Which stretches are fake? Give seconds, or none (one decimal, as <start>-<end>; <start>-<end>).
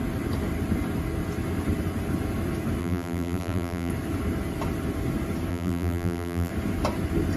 2.8-3.9; 5.5-6.5